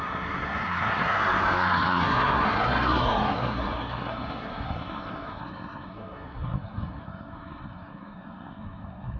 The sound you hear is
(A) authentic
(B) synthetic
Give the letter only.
B